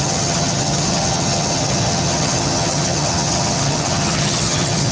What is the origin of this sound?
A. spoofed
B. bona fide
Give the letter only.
A